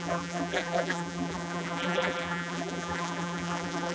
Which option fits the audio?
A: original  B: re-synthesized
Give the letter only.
B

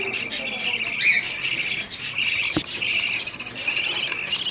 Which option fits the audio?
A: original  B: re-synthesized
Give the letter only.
A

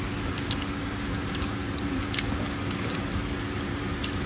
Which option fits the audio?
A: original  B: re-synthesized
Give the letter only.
A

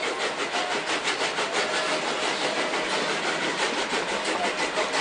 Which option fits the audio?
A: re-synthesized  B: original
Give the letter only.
B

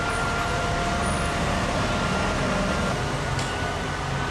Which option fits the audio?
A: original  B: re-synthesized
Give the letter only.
A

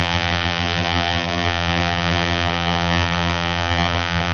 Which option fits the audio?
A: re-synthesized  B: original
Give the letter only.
A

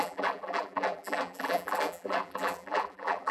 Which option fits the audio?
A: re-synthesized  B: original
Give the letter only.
A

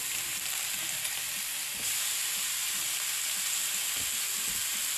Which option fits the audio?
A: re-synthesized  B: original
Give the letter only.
B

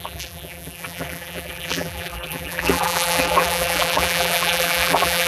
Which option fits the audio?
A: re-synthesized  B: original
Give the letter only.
A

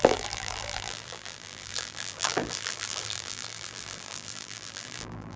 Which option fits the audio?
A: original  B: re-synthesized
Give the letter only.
B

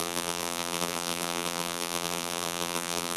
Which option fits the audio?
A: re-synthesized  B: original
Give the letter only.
A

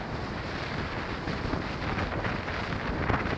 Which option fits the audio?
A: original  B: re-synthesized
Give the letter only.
A